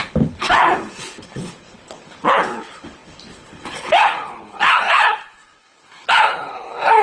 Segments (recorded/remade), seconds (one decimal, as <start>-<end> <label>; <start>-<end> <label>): 0.0-7.0 remade